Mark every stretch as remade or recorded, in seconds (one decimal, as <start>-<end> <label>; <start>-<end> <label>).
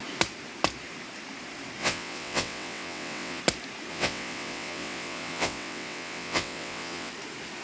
0.0-1.8 recorded; 1.8-3.4 remade; 3.4-3.9 recorded; 3.9-7.1 remade; 7.1-7.6 recorded